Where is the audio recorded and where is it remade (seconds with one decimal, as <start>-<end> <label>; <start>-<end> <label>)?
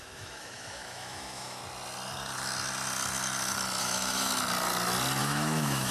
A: 0.0-1.6 remade; 1.6-3.8 recorded; 3.8-4.3 remade; 4.3-5.2 recorded; 5.2-5.9 remade